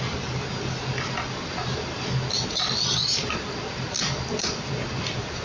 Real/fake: real